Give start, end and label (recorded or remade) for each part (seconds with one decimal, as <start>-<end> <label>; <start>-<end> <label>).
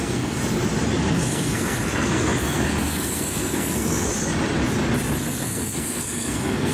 0.0-0.4 remade; 0.4-1.1 recorded; 1.1-4.1 remade; 4.1-5.2 recorded; 5.2-6.7 remade